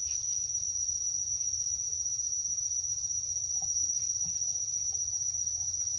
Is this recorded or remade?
recorded